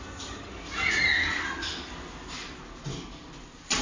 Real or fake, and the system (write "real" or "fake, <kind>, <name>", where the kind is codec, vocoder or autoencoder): real